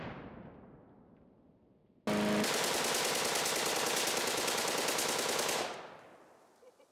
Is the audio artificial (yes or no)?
no